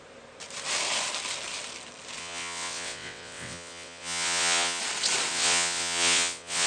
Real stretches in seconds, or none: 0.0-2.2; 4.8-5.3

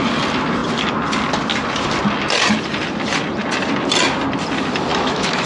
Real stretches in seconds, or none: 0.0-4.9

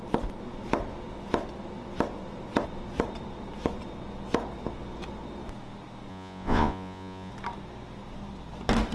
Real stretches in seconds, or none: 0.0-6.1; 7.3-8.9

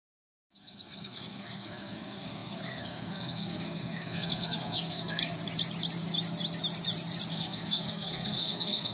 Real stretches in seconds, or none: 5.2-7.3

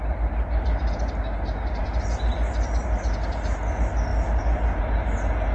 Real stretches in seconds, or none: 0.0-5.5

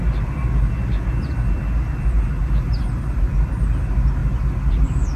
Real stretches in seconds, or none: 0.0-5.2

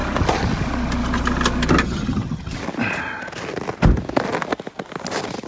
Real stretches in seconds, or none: 0.0-1.8; 2.6-5.5

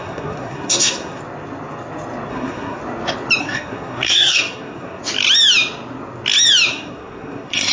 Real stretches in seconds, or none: 1.2-2.3; 2.8-3.4; 5.0-6.7